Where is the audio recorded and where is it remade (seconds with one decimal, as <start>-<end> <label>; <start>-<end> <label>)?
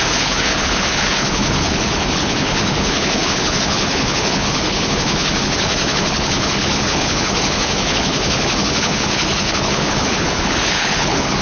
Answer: 0.0-11.4 remade